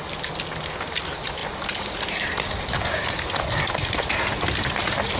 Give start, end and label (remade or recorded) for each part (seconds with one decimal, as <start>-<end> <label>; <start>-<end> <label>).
0.0-5.2 recorded